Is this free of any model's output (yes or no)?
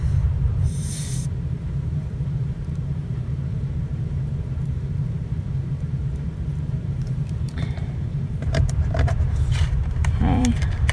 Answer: no